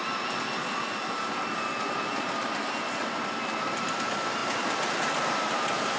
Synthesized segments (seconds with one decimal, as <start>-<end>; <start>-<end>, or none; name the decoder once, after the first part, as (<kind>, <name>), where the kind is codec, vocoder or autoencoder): none